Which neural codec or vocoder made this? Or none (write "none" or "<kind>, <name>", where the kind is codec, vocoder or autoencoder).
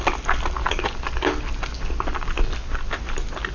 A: none